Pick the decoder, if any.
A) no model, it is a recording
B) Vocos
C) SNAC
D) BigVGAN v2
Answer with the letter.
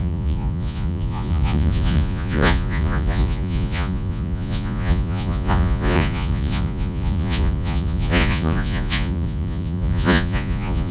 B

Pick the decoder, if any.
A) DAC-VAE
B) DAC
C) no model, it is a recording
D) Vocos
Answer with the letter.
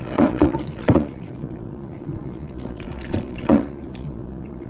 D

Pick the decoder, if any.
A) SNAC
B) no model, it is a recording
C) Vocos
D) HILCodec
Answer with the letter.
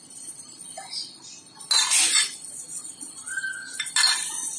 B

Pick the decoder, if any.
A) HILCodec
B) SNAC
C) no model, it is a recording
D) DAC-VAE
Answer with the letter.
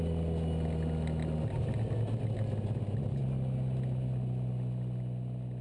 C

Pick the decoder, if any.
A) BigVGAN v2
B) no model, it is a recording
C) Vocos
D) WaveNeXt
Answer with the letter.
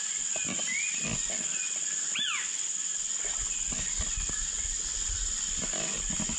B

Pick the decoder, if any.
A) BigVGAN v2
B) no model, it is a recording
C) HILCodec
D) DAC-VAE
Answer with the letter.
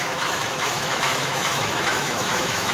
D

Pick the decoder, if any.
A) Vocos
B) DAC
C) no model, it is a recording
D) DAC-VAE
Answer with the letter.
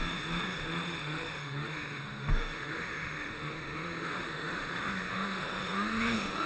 D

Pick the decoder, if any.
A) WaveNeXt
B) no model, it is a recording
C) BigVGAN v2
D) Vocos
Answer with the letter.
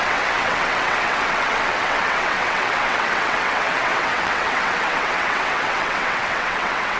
A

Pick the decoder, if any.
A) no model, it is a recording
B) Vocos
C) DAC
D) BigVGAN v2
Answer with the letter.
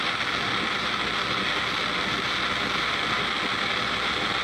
A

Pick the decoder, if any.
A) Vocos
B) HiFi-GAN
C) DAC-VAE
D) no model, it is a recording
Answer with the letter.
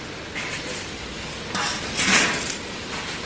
D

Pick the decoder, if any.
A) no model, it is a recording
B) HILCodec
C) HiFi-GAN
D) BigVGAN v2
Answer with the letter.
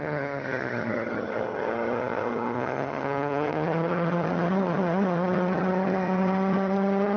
C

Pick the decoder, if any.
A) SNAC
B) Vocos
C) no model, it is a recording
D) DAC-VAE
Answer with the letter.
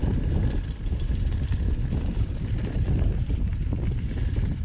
C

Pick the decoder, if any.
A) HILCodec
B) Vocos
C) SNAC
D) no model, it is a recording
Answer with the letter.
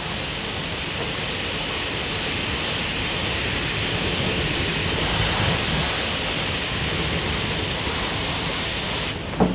D